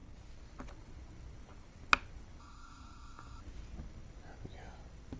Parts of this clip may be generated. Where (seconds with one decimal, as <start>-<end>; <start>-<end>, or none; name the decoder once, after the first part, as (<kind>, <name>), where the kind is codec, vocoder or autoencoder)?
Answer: 2.4-3.4 (codec, SNAC)